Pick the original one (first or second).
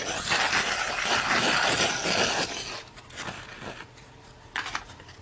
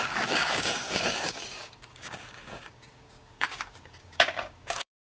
first